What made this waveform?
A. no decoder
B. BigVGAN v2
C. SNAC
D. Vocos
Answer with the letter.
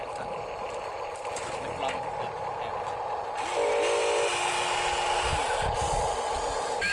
A